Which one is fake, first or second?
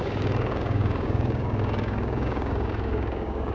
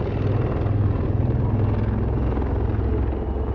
first